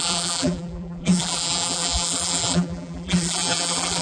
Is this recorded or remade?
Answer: remade